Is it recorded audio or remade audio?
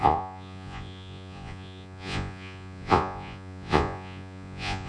remade